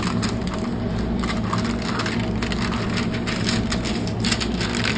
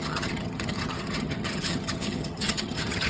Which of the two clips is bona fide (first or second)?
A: first